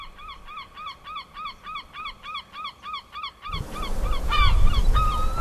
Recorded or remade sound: recorded